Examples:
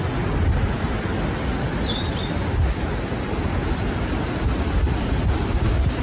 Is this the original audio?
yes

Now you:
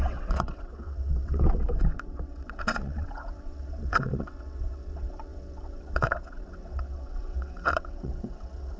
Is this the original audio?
no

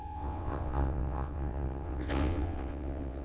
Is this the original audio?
no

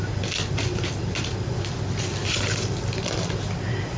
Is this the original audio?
yes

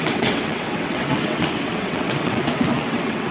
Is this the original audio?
no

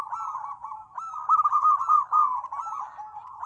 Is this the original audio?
yes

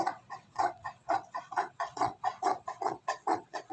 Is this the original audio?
no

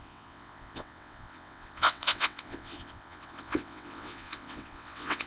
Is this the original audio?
no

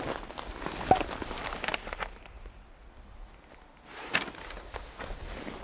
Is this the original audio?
yes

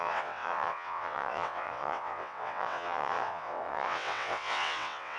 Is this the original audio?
no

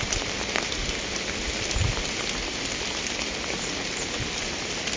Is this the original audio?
yes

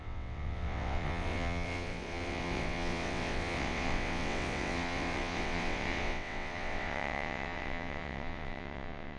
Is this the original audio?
no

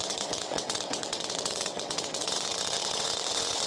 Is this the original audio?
no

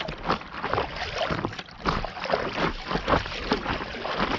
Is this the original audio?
yes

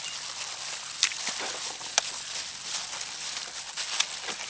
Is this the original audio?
yes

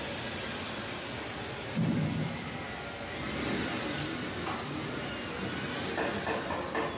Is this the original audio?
yes